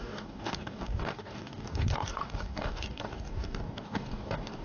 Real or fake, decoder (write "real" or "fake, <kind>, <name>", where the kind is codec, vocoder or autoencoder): fake, codec, DAC